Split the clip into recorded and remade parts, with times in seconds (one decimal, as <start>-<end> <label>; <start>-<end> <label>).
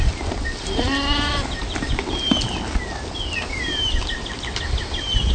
0.0-5.3 recorded